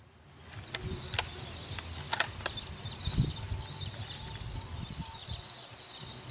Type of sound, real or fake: real